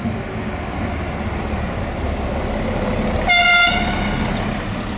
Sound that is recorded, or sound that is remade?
recorded